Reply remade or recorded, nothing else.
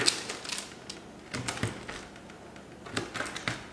recorded